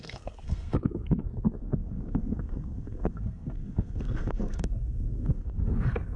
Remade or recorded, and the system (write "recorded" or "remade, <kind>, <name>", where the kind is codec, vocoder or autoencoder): remade, codec, SNAC